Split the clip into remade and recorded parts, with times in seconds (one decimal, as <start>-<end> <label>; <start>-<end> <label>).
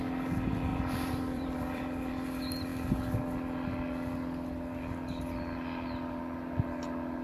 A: 0.0-0.7 recorded; 0.7-2.1 remade; 2.1-7.2 recorded